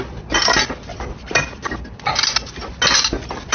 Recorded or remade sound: recorded